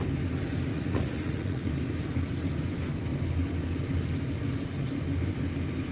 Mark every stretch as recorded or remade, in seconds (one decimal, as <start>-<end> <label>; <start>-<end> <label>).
0.0-0.7 recorded; 0.7-1.7 remade; 1.7-5.9 recorded